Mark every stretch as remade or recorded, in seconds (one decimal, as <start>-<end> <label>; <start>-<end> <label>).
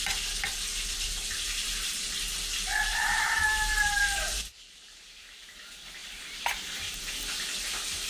0.0-2.9 recorded; 2.9-4.3 remade; 4.3-6.0 recorded; 6.0-7.1 remade; 7.1-8.1 recorded